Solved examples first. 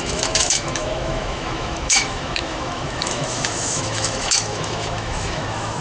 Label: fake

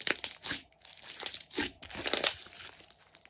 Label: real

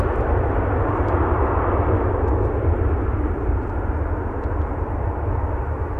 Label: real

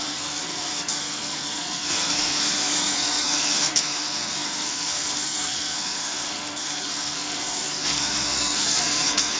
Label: fake